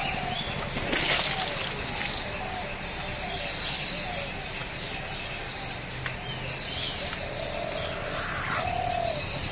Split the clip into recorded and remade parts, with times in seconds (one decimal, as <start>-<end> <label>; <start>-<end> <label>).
0.0-9.5 recorded